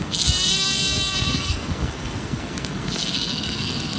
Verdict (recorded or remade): remade